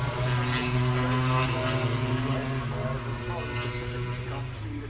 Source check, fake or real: real